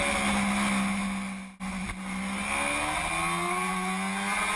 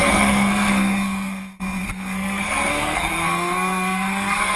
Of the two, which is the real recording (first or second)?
first